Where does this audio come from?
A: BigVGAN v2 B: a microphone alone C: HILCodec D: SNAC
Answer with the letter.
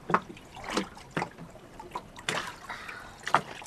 A